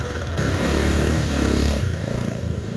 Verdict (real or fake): fake